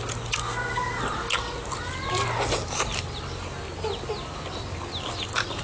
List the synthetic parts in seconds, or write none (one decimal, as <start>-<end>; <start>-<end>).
0.4-1.0

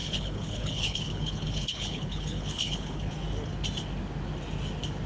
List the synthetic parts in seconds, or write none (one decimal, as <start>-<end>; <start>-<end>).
0.0-3.1

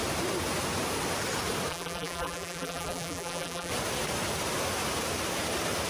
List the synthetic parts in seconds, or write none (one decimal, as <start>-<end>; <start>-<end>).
1.7-3.7

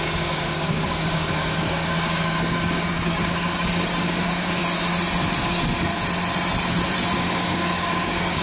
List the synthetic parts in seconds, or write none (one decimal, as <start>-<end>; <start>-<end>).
0.0-4.6; 5.4-5.9; 7.2-8.4